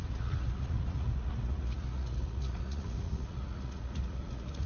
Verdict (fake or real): fake